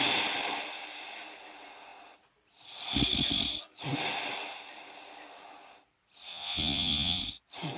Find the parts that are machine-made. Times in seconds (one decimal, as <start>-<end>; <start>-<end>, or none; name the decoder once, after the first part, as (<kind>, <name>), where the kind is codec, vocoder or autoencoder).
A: 6.3-7.2 (vocoder, Vocos)